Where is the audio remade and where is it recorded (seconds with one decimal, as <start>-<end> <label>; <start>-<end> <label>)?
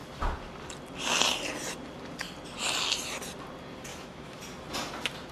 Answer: 0.0-3.9 recorded; 3.9-4.4 remade; 4.4-5.3 recorded